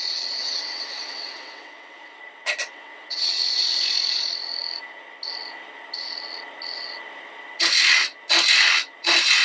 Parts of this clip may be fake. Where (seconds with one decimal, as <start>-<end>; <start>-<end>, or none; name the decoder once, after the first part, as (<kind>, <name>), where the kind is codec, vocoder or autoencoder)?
0.4-2.2 (vocoder, WaveNeXt); 2.6-3.3